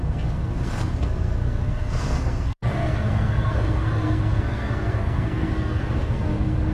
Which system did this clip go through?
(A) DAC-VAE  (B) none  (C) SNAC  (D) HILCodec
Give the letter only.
C